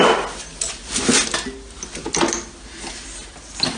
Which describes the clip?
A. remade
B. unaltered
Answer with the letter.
B